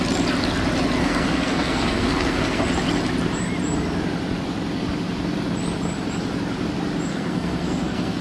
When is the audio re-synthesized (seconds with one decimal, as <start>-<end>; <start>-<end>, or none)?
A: 1.0-2.6; 7.1-8.2